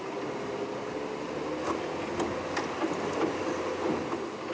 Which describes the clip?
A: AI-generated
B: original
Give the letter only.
B